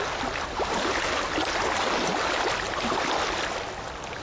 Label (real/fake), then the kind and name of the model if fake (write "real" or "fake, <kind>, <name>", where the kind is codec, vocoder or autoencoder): real